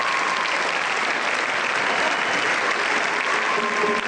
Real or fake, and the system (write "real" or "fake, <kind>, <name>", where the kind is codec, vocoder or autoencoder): real